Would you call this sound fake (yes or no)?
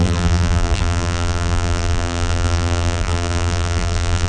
yes